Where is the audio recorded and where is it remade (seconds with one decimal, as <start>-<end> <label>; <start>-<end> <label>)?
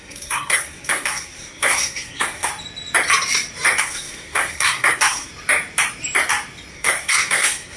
0.0-2.5 remade; 2.5-3.8 recorded; 3.8-5.3 remade; 5.3-6.7 recorded; 6.7-7.8 remade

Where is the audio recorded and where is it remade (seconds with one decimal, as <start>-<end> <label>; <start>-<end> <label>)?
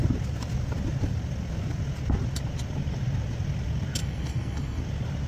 0.0-4.0 recorded; 4.0-4.8 remade; 4.8-5.3 recorded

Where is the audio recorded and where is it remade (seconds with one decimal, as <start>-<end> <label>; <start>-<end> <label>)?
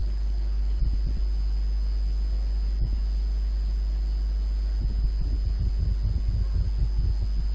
0.0-0.8 remade; 0.8-7.5 recorded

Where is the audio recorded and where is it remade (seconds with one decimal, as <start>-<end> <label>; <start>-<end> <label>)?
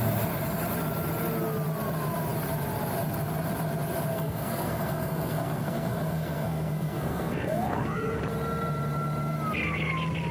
0.0-4.1 recorded; 4.1-8.2 remade; 8.2-10.3 recorded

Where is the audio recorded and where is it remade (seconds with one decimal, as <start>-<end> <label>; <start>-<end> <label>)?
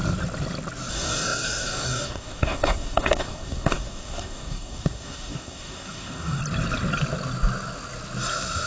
0.0-0.9 recorded; 0.9-6.4 remade; 6.4-8.7 recorded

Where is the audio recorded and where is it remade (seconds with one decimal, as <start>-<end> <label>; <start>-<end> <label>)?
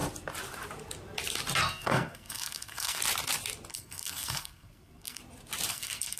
0.0-1.6 recorded; 1.6-3.0 remade; 3.0-3.7 recorded; 3.7-5.2 remade; 5.2-5.7 recorded; 5.7-6.2 remade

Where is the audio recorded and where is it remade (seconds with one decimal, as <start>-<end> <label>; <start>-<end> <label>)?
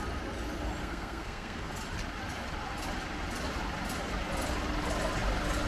0.0-0.8 recorded; 0.8-1.7 remade; 1.7-5.7 recorded